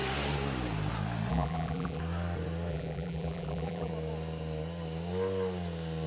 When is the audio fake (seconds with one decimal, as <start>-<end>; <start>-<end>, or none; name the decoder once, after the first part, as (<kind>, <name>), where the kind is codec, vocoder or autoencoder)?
1.3-2.0 (vocoder, BigVGAN v2); 2.7-3.9